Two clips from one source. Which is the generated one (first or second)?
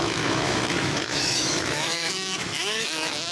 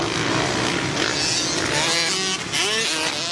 first